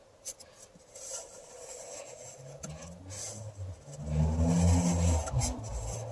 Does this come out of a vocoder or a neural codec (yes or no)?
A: no